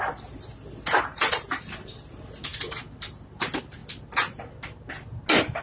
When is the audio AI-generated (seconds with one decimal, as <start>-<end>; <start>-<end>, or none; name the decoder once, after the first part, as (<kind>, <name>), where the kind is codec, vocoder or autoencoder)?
1.1-2.1 (vocoder, BigVGAN v2)